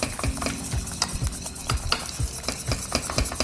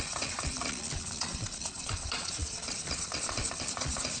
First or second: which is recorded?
first